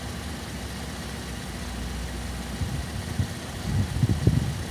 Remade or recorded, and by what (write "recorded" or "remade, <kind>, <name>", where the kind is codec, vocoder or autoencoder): recorded